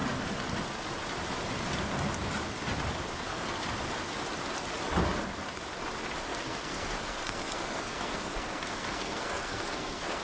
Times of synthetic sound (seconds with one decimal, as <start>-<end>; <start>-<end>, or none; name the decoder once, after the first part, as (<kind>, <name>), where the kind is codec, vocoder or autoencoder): 6.3-10.2 (codec, SNAC)